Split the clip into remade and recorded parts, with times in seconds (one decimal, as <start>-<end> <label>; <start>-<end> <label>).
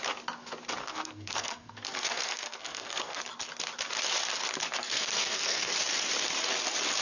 0.0-0.8 recorded; 0.8-3.2 remade; 3.2-4.8 recorded; 4.8-5.7 remade; 5.7-7.0 recorded